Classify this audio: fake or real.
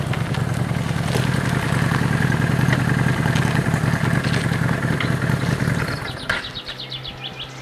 real